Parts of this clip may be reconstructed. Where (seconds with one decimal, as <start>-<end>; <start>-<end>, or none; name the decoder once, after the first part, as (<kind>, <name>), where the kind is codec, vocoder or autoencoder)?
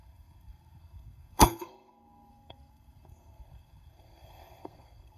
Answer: 0.0-5.2 (codec, SNAC)